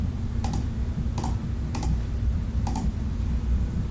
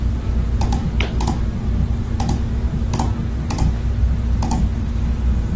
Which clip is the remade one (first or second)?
first